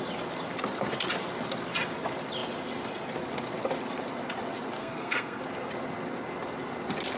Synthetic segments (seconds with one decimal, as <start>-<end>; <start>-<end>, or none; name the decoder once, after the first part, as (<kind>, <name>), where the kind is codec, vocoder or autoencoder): 4.8-5.4 (codec, SNAC)